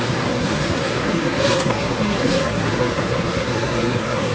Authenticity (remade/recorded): remade